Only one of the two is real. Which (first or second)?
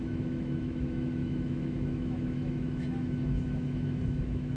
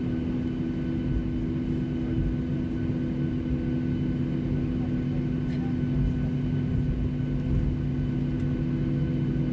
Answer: second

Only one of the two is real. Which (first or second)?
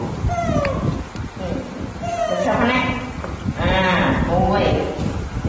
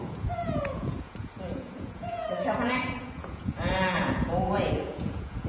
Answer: first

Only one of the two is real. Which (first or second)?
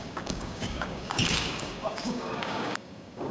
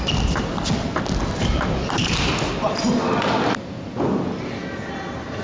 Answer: second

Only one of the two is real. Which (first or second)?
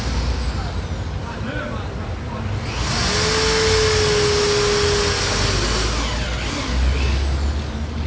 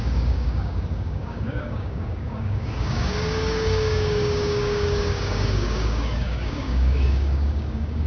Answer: first